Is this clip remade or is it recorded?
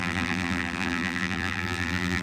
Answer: remade